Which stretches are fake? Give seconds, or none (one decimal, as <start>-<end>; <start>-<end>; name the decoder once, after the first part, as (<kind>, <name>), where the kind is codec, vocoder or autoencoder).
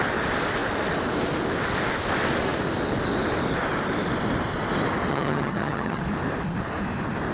5.1-6.0 (vocoder, HiFi-GAN)